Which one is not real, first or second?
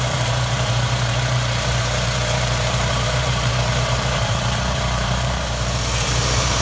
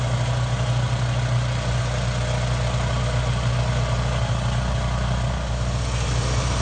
first